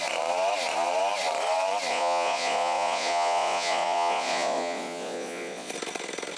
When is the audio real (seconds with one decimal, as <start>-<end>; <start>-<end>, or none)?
0.0-1.9; 5.7-6.4